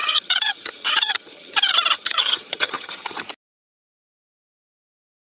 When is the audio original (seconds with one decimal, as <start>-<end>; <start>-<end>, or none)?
3.2-5.3